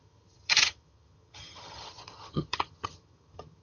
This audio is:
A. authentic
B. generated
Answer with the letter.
B